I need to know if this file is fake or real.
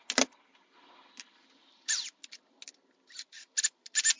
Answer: real